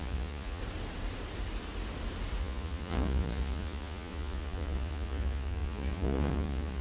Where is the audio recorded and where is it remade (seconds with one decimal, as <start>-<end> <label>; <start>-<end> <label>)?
0.0-0.6 remade; 0.6-2.4 recorded; 2.4-6.8 remade